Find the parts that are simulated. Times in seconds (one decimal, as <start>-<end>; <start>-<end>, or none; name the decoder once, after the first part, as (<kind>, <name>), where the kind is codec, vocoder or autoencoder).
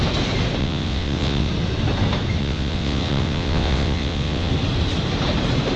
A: 0.6-1.5 (vocoder, WaveNeXt); 2.4-4.5